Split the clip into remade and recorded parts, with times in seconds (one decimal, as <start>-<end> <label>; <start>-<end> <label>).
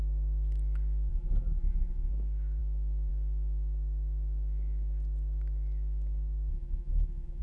0.0-1.1 recorded; 1.1-2.1 remade; 2.1-6.5 recorded; 6.5-7.4 remade